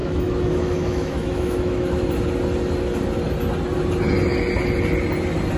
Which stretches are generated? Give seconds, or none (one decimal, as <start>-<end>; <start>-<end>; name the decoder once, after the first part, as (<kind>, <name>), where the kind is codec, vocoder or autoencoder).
0.0-2.1 (autoencoder, DAC-VAE)